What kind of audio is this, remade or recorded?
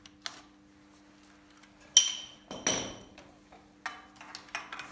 recorded